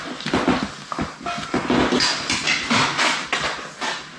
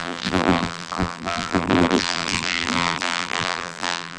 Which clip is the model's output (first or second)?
second